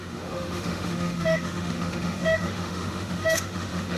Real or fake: fake